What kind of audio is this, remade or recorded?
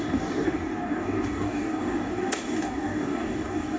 remade